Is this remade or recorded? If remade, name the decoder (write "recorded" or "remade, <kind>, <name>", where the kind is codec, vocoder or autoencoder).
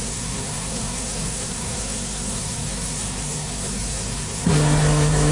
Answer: remade, codec, SNAC